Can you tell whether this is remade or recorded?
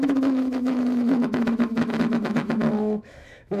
remade